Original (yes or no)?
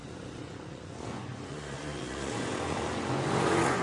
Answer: no